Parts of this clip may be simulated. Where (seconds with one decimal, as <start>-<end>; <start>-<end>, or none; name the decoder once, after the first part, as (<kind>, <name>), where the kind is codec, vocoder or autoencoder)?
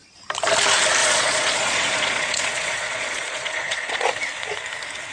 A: 1.0-4.1 (vocoder, Vocos)